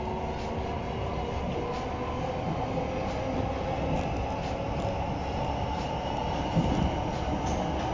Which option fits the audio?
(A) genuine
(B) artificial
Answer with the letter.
A